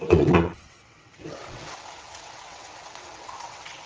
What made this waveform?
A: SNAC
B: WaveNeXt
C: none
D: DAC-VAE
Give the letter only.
B